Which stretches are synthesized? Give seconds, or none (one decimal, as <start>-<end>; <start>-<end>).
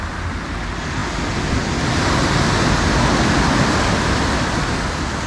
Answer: none